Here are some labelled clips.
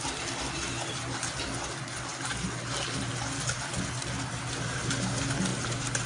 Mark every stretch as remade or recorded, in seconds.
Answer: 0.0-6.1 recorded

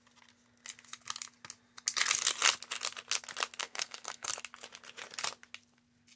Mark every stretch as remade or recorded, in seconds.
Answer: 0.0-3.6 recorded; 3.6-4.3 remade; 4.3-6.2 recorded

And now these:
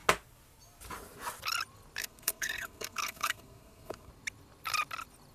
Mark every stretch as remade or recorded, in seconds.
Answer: 0.0-2.0 recorded; 2.0-4.1 remade; 4.1-5.3 recorded